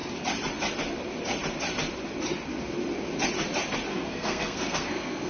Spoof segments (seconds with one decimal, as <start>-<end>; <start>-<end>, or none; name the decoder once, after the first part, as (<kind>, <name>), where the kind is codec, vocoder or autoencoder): 3.9-5.3 (codec, SNAC)